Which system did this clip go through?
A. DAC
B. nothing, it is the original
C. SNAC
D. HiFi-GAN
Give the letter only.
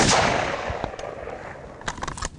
B